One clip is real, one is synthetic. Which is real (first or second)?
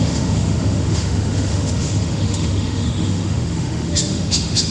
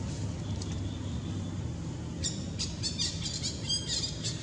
second